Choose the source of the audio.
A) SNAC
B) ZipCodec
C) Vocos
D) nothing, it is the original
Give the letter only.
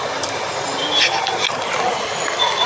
D